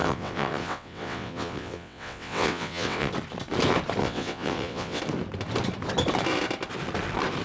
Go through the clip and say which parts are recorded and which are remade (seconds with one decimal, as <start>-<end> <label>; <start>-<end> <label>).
0.0-3.1 remade; 3.1-4.0 recorded; 4.0-5.0 remade; 5.0-7.4 recorded